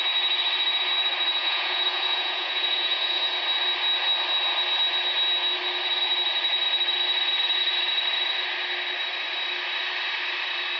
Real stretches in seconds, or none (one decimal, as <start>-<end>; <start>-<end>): 0.0-1.4; 3.2-10.8